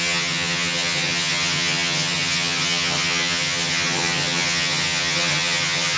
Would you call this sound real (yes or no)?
no